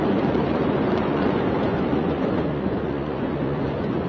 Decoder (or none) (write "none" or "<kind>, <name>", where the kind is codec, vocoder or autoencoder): vocoder, Vocos